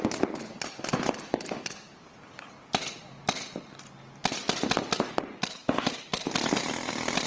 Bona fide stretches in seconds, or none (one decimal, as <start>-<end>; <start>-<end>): 0.0-1.3; 2.2-7.3